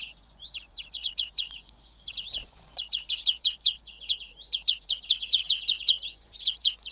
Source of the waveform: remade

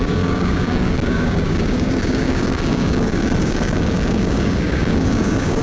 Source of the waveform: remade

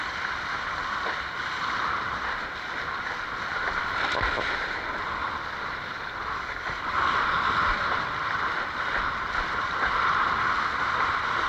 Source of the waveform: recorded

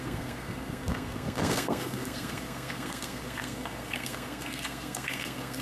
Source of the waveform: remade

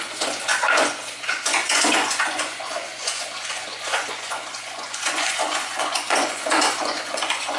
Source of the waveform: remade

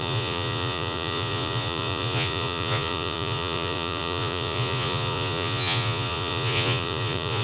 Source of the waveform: remade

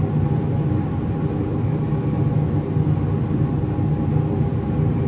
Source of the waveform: recorded